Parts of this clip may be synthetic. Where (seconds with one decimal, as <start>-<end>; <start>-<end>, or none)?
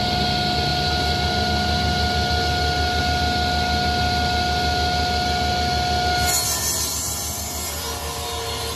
none